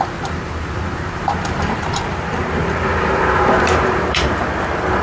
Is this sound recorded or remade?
remade